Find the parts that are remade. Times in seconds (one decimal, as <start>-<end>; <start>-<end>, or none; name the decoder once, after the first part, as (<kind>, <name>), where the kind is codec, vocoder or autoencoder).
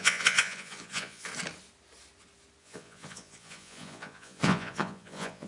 0.0-1.3 (vocoder, Vocos); 2.6-5.5